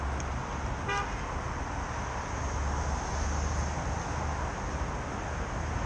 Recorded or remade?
recorded